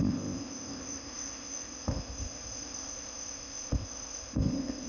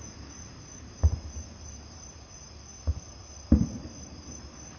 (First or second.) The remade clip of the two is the first